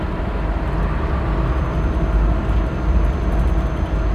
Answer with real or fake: real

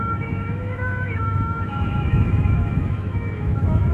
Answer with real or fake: fake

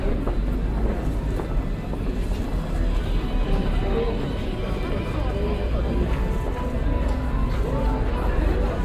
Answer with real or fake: real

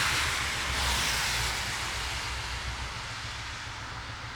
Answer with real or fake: real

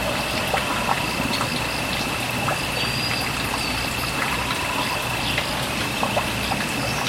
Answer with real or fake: real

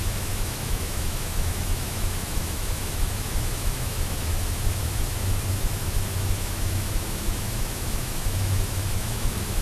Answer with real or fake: fake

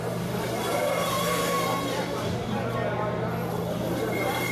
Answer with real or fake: real